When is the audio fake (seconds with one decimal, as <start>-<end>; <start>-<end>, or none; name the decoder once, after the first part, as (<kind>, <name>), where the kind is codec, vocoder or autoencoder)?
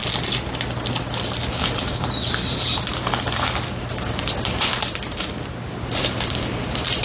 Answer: 1.6-7.0 (vocoder, BigVGAN v2)